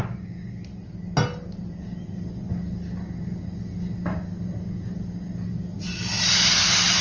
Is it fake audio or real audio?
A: real